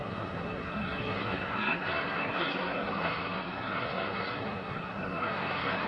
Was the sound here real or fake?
fake